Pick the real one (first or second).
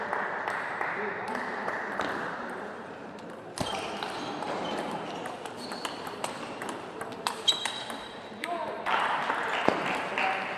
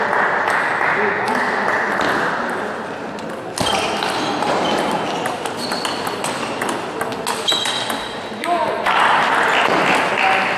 second